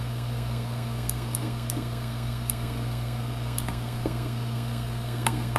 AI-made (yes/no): yes